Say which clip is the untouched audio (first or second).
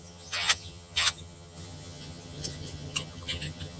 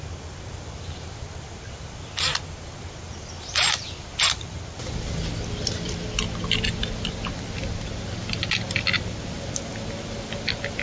second